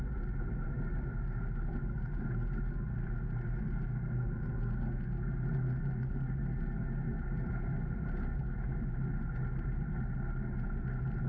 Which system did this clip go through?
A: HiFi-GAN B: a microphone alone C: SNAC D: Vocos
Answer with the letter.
B